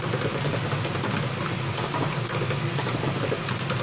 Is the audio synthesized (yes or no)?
no